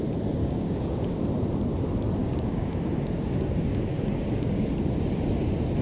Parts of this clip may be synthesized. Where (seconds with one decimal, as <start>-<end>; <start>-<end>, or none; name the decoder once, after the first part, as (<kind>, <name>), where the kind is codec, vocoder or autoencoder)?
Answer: 0.4-1.2 (codec, DAC); 2.2-4.7

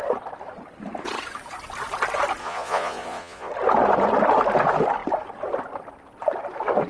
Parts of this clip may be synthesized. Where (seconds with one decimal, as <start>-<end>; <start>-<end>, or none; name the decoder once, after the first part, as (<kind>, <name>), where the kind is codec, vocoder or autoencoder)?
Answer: 2.4-3.5 (vocoder, Vocos)

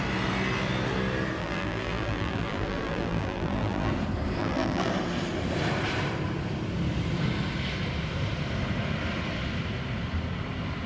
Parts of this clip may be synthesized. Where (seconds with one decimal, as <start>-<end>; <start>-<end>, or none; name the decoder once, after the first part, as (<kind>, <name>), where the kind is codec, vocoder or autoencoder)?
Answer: 1.4-3.9 (vocoder, BigVGAN v2); 4.4-4.9

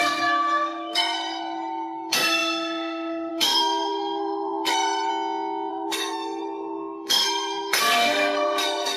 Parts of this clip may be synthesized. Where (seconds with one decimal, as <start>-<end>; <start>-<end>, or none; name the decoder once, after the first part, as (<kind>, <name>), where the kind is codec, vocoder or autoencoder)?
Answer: 0.0-5.1 (codec, SNAC); 5.7-9.0

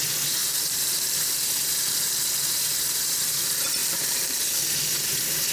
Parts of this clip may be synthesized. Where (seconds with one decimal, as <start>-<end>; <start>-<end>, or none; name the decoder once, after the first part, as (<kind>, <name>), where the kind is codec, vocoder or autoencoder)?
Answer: 0.4-1.2 (vocoder, BigVGAN v2); 3.8-4.4

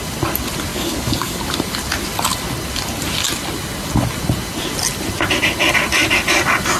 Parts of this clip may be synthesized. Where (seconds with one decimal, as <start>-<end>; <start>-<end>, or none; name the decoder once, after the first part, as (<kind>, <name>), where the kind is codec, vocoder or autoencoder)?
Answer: 0.7-1.4 (codec, DAC)

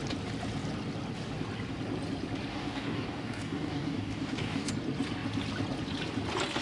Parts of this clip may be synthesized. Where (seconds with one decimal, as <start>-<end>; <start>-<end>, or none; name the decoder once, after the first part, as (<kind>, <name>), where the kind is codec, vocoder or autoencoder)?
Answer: 2.5-4.7 (codec, DAC)